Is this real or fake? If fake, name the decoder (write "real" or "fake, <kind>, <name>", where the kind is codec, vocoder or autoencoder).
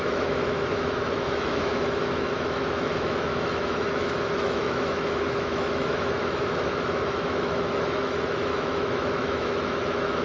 fake, autoencoder, DAC-VAE